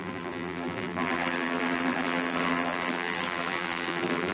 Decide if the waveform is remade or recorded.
remade